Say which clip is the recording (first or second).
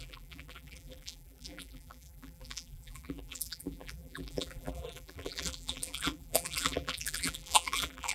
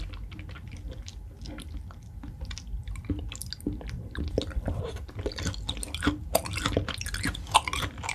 second